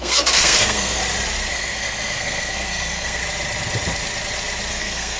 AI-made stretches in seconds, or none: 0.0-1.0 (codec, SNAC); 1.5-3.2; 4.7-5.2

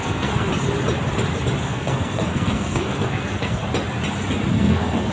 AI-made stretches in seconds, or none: 0.0-0.5 (codec, SNAC); 1.6-3.6; 4.5-5.1

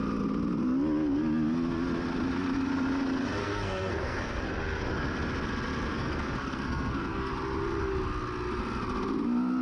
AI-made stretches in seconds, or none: 3.4-4.4 (codec, SNAC); 6.0-7.3

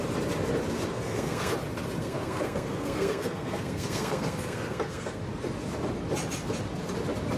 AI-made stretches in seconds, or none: 0.9-1.5 (codec, SNAC); 2.0-5.2

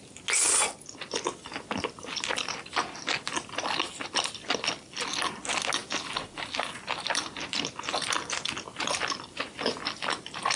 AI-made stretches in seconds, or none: none

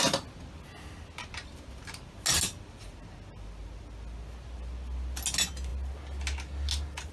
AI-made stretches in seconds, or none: none

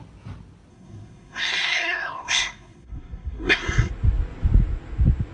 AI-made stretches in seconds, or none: 0.7-3.9 (codec, SNAC)